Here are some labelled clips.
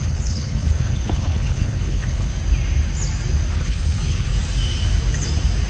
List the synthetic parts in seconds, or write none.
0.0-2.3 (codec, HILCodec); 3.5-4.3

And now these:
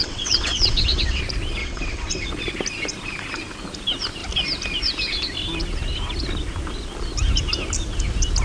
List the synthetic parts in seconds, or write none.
0.0-1.2 (vocoder, WaveNeXt); 1.6-2.3

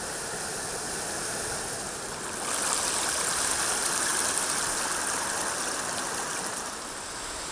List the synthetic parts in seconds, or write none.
none